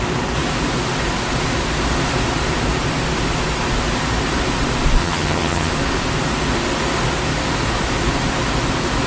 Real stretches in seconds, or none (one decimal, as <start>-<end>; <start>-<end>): 0.0-5.0; 5.7-9.1